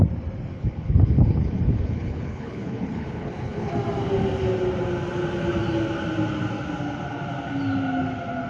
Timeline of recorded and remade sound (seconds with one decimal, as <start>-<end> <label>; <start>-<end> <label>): 0.0-0.5 recorded; 0.5-3.7 remade; 3.7-8.5 recorded